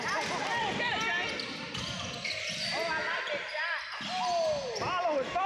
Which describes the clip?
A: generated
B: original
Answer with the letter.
B